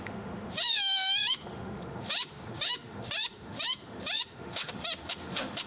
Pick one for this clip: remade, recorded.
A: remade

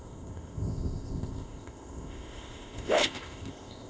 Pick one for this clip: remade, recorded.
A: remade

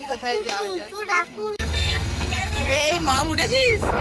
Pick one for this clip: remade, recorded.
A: remade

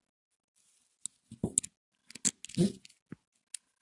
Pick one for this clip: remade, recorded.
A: recorded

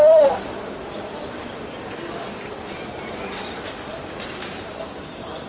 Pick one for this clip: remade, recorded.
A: recorded